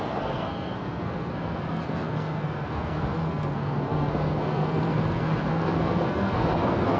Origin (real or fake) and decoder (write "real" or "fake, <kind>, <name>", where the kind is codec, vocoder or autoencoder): fake, codec, SNAC